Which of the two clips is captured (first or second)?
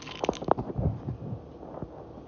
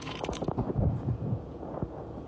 first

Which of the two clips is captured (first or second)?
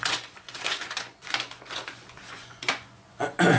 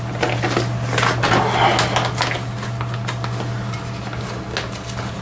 second